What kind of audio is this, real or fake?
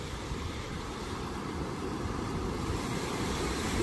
fake